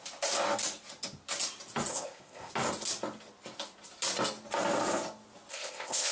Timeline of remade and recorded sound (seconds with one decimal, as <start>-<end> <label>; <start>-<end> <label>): 0.0-1.9 recorded; 1.9-2.5 remade; 2.5-5.5 recorded; 5.5-6.1 remade